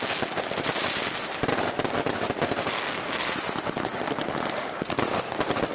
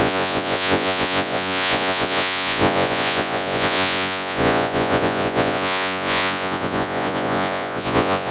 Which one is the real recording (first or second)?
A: first